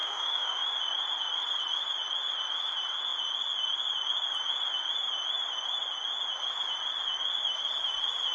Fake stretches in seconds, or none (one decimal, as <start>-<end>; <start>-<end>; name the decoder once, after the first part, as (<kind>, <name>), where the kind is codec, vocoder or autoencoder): 0.0-0.8 (autoencoder, DAC-VAE)